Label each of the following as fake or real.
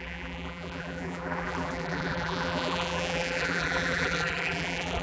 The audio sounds fake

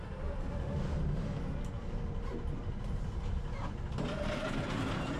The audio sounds real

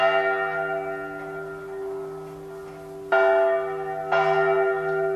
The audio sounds real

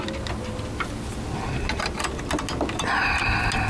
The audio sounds real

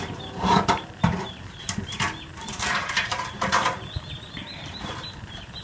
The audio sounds fake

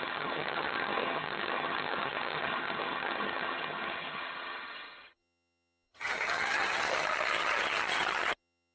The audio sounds fake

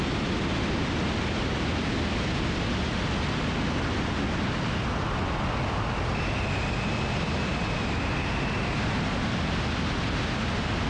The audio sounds real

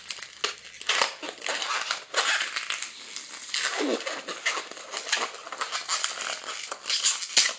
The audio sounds real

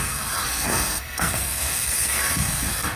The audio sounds fake